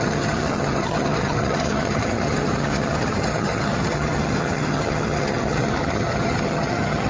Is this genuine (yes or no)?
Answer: no